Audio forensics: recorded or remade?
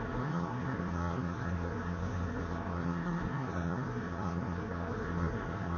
remade